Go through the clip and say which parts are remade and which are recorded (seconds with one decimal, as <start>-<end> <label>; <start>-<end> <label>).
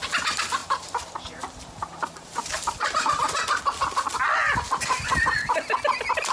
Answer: 0.0-0.6 recorded; 0.6-3.6 remade; 3.6-6.3 recorded